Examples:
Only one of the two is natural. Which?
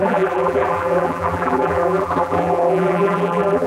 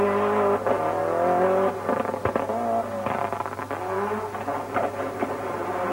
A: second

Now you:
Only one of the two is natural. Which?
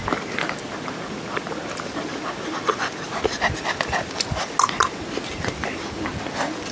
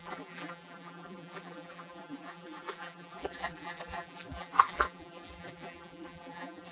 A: first